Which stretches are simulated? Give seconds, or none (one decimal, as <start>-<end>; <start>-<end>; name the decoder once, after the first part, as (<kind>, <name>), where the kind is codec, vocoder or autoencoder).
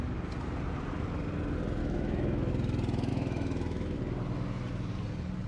1.8-2.5 (autoencoder, DAC-VAE); 3.1-4.0